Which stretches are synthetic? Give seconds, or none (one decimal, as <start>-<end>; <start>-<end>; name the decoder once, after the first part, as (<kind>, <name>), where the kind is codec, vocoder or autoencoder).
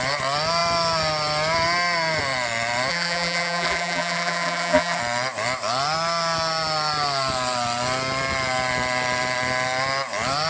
2.9-5.0 (vocoder, BigVGAN v2)